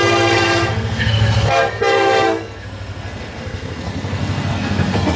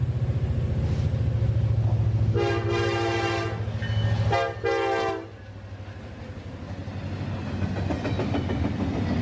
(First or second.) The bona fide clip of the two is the second